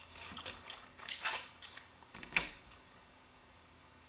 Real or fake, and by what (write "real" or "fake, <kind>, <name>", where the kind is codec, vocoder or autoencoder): fake, codec, DAC